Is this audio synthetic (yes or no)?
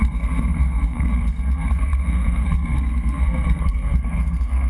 yes